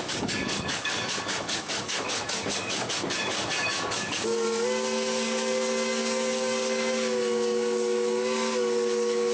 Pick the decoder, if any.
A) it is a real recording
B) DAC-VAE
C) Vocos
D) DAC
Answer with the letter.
D